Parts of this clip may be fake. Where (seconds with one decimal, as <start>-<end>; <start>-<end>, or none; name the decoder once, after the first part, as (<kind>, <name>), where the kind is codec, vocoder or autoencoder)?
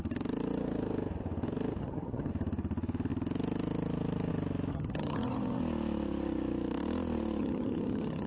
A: 1.8-2.3 (vocoder, HiFi-GAN); 4.7-5.6; 7.4-8.3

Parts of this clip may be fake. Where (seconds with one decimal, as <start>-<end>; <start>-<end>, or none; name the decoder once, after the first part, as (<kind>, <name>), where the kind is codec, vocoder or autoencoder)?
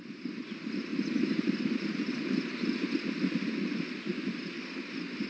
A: 0.0-4.1 (vocoder, BigVGAN v2)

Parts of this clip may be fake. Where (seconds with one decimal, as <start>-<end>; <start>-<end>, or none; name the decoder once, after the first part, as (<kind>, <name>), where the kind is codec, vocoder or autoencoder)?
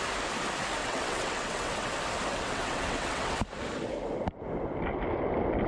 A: 0.8-1.9 (vocoder, WaveNeXt); 2.3-3.4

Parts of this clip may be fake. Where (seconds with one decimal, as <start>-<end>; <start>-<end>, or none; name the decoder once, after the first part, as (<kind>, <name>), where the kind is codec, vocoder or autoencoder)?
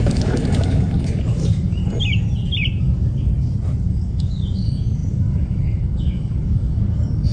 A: 0.0-1.8 (codec, DAC); 2.8-3.3; 3.9-7.3